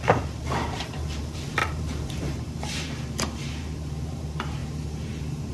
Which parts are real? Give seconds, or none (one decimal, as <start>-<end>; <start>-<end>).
none